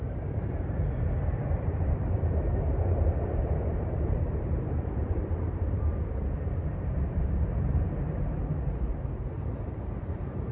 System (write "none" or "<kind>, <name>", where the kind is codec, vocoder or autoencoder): vocoder, BigVGAN v2